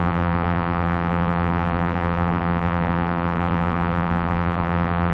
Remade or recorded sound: remade